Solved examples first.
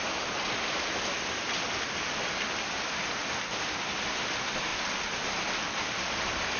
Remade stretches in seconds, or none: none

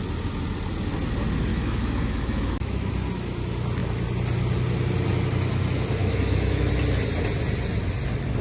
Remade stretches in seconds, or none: 1.5-2.9 (autoencoder, DAC-VAE); 6.0-6.7

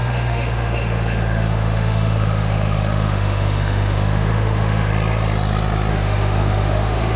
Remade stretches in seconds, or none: 0.0-4.9 (autoencoder, DAC-VAE); 5.9-7.2

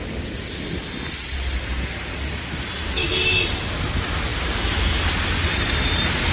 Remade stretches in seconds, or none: none

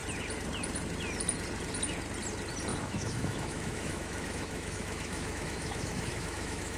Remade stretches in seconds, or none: 2.7-6.8 (autoencoder, DAC-VAE)